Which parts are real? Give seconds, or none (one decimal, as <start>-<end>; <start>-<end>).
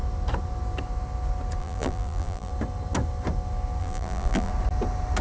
0.0-1.6; 2.5-3.8; 4.5-5.2